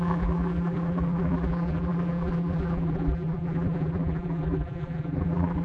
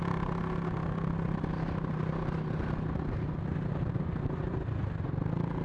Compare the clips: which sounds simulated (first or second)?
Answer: first